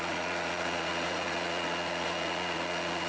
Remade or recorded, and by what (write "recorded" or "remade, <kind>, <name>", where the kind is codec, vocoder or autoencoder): remade, vocoder, Vocos